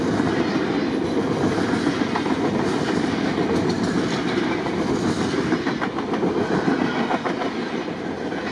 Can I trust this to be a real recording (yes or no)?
yes